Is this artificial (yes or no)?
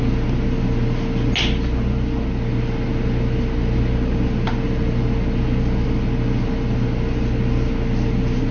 no